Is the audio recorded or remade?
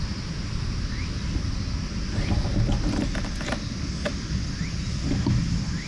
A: recorded